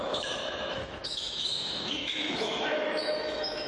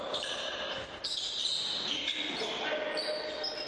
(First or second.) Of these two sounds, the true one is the second